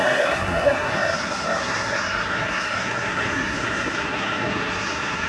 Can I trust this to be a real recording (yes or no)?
no